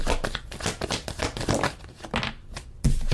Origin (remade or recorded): recorded